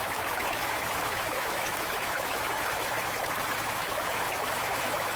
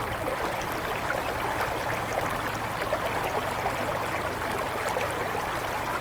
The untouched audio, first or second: second